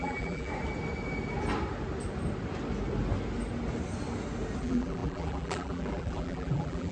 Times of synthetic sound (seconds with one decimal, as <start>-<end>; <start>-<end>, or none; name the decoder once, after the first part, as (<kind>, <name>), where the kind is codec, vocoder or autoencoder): 0.0-0.5 (vocoder, BigVGAN v2); 4.6-6.9